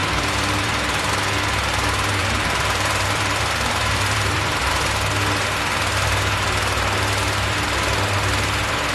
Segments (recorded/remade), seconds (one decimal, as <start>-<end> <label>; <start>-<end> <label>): 0.0-1.1 remade; 1.1-2.2 recorded; 2.2-4.7 remade; 4.7-8.9 recorded